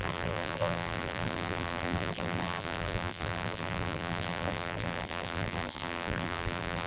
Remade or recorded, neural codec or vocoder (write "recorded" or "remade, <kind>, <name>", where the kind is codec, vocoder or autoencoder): remade, vocoder, BigVGAN v2